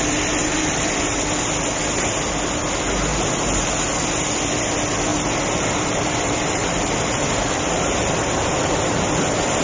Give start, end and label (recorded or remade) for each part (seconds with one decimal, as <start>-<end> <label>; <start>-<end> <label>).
0.0-0.4 recorded; 0.4-1.2 remade; 1.2-3.1 recorded; 3.1-3.7 remade; 3.7-5.1 recorded; 5.1-9.6 remade